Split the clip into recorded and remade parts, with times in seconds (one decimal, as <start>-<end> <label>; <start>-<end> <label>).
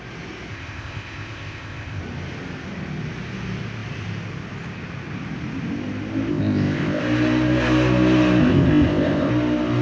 0.0-0.5 recorded; 0.5-2.0 remade; 2.0-6.3 recorded; 6.3-7.0 remade; 7.0-8.4 recorded; 8.4-9.3 remade; 9.3-9.8 recorded